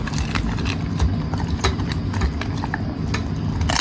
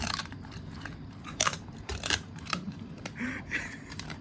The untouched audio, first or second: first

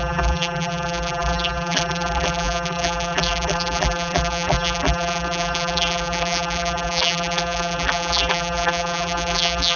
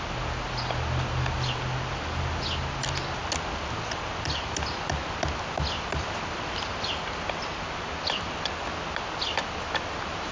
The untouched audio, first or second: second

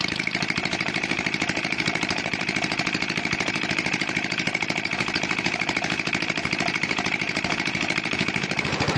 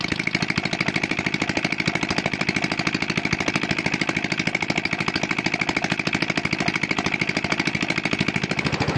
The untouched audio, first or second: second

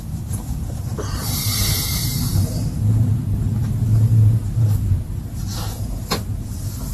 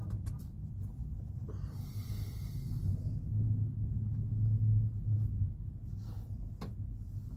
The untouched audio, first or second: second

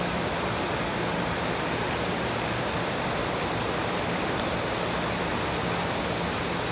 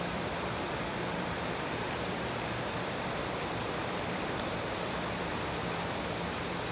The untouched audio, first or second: first